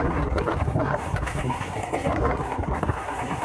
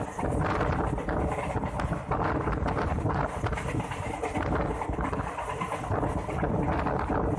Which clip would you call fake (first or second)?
first